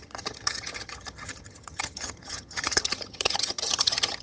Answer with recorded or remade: remade